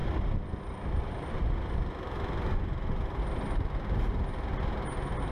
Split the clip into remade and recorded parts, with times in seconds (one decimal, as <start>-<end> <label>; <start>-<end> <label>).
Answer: 0.0-3.2 remade; 3.2-5.3 recorded